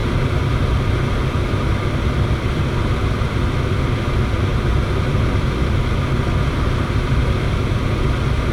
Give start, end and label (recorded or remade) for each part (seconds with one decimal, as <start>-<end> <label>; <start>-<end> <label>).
0.0-0.6 remade; 0.6-4.5 recorded; 4.5-7.5 remade; 7.5-8.5 recorded